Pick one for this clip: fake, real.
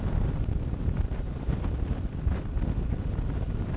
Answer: fake